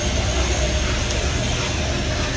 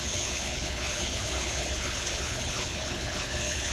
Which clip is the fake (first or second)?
second